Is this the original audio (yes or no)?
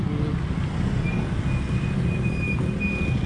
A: yes